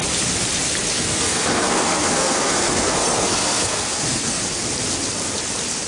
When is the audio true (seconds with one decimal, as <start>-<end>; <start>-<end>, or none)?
0.0-0.9; 4.4-5.9